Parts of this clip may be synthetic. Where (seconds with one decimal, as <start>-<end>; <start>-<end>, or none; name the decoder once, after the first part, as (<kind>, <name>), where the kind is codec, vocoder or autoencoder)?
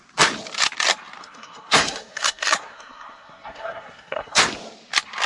1.2-4.4 (codec, SNAC)